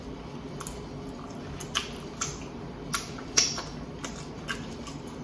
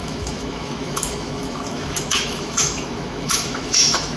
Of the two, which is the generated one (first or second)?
second